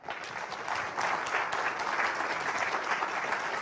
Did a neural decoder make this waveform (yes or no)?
no